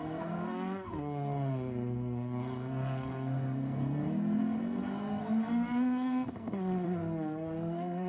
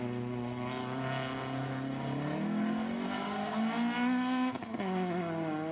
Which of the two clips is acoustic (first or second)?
second